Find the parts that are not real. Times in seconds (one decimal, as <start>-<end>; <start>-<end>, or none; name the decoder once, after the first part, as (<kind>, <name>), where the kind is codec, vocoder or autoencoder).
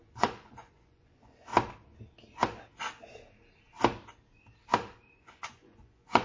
0.0-1.5 (vocoder, Vocos); 5.2-6.2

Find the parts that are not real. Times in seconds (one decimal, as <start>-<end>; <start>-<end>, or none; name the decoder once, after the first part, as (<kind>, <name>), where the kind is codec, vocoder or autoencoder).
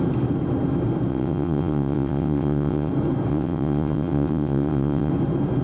1.1-2.9 (vocoder, WaveNeXt); 3.3-5.1